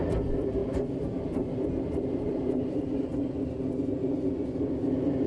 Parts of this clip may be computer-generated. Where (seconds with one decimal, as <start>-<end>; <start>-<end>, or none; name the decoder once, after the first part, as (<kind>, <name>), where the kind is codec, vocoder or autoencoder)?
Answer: 0.0-3.1 (vocoder, BigVGAN v2)